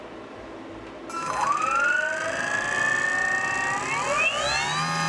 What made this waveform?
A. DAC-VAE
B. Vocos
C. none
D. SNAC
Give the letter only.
C